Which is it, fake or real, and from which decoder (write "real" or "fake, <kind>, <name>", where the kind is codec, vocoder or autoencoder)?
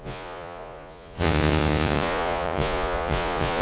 fake, vocoder, Vocos